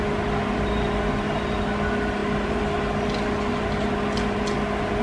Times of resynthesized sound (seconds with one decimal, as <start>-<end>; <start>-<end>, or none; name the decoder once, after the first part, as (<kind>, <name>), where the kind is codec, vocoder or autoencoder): none